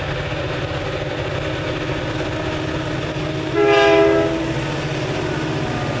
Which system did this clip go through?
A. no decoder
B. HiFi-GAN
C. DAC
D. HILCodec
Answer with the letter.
A